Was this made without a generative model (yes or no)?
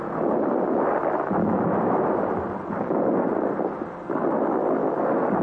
yes